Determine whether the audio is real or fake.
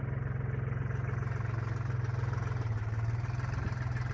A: real